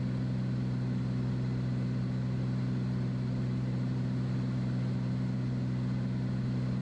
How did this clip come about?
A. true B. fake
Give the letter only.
A